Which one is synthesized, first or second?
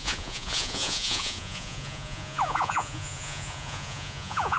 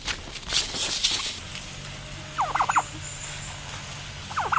first